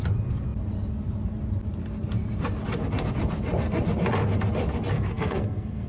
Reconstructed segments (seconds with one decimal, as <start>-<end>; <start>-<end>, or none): 4.9-5.9